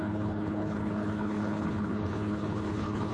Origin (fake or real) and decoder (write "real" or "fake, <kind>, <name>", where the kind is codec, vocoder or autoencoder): fake, codec, HILCodec